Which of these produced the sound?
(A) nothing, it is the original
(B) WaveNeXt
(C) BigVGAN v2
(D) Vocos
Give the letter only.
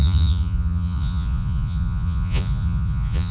D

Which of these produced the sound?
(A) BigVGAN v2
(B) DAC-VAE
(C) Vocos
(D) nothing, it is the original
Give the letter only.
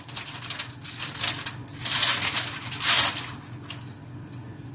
D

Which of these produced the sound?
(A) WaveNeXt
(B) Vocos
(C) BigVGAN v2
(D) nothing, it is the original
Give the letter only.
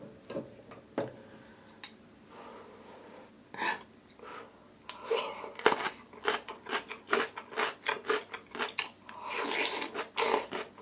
D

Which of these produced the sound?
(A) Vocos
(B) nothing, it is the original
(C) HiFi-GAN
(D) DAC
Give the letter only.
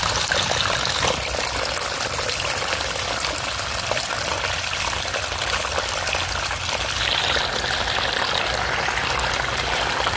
B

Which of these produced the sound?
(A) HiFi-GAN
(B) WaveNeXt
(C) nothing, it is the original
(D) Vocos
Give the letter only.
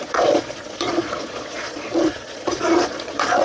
D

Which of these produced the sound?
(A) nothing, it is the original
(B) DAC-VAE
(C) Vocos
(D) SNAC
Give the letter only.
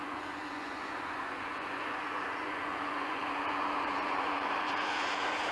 C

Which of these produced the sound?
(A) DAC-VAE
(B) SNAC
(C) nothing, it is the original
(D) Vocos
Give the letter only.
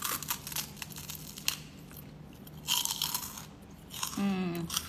C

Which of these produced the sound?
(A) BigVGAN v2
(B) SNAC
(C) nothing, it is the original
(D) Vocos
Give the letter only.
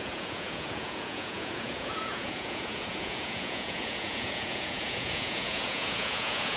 D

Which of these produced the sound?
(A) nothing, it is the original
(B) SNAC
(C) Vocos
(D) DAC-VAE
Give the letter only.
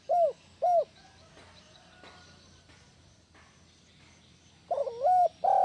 A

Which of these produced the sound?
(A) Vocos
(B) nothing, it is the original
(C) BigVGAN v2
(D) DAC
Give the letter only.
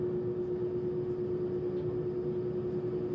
B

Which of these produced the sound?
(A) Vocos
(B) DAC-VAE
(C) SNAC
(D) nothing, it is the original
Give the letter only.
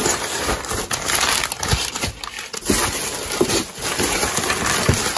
D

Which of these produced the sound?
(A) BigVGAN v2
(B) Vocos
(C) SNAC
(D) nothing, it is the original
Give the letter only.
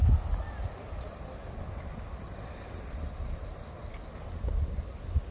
D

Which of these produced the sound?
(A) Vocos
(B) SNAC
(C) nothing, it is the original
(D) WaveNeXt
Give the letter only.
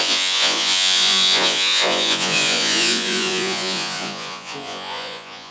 A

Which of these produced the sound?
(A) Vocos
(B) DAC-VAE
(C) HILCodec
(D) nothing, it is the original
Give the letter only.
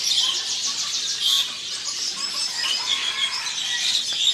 D